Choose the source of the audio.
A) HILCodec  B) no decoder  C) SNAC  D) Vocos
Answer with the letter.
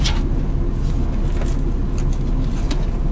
B